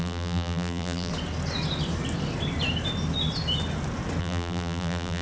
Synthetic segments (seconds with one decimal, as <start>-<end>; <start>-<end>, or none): 0.0-1.1; 4.2-5.2